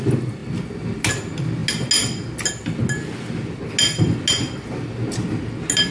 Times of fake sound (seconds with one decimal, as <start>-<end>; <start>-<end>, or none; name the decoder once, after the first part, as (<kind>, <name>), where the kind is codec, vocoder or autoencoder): none

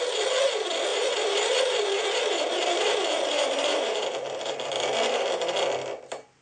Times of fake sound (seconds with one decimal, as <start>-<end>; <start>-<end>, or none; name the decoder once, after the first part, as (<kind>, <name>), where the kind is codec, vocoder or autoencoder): 0.9-4.7 (vocoder, BigVGAN v2)

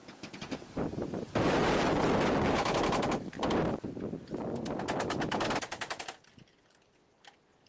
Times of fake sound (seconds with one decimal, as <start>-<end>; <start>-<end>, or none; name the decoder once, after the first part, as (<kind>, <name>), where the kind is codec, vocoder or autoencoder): 0.0-0.8 (vocoder, Vocos)

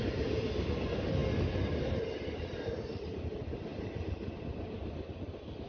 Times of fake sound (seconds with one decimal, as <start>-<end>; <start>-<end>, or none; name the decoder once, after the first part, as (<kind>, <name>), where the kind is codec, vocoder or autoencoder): none